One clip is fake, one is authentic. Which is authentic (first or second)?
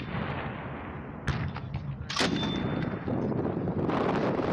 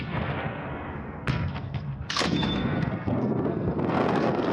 first